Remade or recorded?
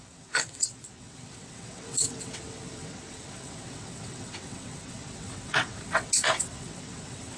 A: remade